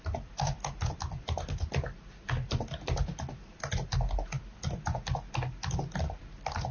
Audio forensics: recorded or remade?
recorded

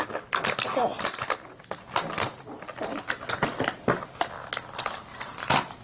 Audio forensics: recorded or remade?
recorded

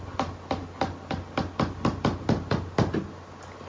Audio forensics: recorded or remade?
recorded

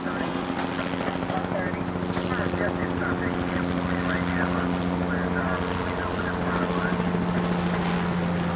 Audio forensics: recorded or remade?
recorded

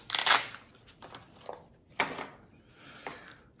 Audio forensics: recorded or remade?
recorded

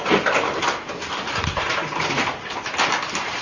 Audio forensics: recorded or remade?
recorded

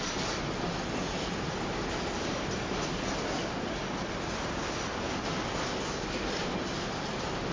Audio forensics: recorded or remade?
recorded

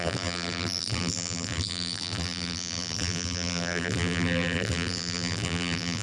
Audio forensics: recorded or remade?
remade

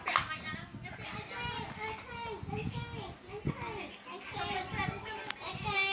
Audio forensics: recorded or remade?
recorded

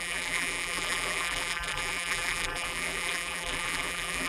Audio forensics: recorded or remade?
remade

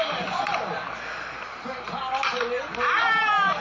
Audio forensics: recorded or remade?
recorded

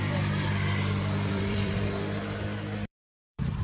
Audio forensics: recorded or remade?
remade